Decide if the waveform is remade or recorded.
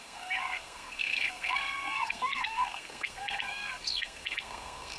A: remade